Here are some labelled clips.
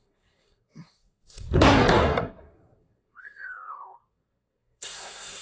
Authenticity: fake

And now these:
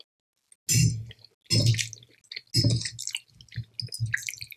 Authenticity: real